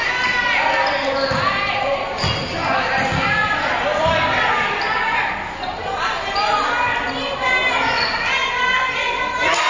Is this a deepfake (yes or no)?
no